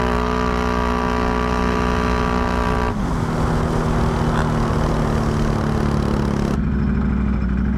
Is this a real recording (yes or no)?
yes